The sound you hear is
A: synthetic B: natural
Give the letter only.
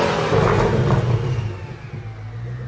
B